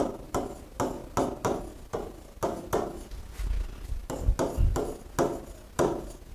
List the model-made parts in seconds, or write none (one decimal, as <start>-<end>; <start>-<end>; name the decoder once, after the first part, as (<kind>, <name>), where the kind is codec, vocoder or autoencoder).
none